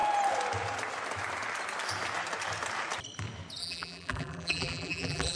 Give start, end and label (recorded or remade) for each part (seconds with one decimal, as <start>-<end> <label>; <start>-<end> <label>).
0.0-3.6 recorded; 3.6-5.4 remade